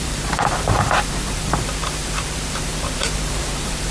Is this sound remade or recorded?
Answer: remade